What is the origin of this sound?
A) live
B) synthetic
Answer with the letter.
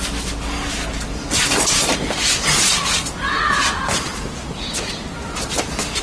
A